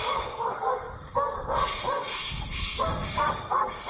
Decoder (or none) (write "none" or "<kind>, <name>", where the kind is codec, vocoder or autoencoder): codec, SNAC